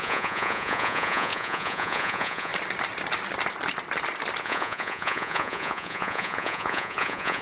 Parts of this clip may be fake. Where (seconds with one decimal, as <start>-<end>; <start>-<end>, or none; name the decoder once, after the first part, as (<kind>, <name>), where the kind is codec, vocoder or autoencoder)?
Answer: 0.0-2.5 (vocoder, Vocos); 4.4-7.4